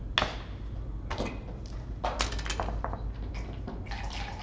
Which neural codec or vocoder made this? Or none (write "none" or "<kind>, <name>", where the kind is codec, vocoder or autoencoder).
none